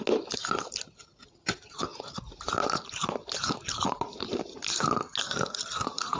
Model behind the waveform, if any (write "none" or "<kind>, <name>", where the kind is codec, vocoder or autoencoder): none